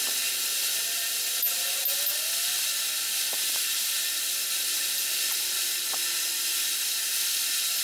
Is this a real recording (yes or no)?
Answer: yes